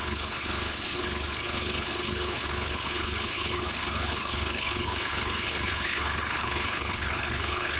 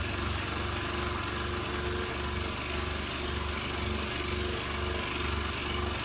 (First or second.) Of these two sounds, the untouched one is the second